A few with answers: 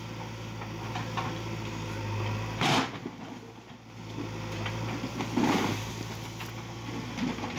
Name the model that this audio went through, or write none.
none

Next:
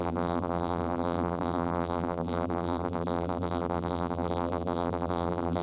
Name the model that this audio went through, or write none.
vocoder, BigVGAN v2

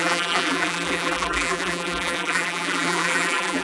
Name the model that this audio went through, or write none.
vocoder, BigVGAN v2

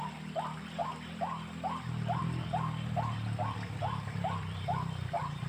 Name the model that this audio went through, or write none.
vocoder, BigVGAN v2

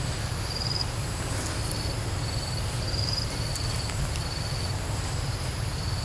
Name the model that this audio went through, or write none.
vocoder, BigVGAN v2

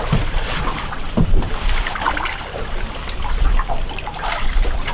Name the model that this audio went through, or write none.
vocoder, BigVGAN v2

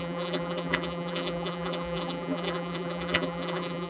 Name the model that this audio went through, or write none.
vocoder, BigVGAN v2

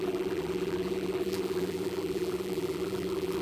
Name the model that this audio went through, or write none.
vocoder, BigVGAN v2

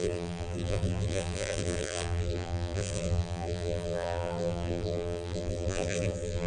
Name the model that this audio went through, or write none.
vocoder, BigVGAN v2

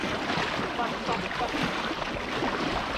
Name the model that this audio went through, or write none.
none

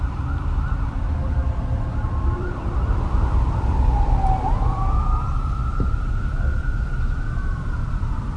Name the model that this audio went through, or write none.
vocoder, BigVGAN v2